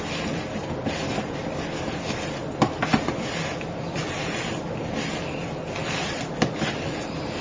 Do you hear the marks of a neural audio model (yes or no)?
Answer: no